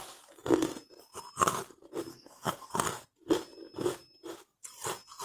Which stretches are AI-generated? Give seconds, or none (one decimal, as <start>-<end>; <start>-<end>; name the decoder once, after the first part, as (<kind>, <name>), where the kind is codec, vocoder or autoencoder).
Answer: 2.1-2.7 (codec, DAC)